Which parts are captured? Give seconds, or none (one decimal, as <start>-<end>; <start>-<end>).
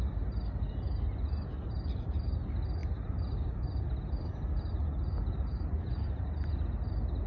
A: 0.0-7.3